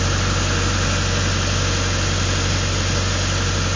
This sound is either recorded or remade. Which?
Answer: recorded